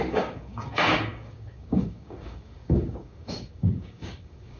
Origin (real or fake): fake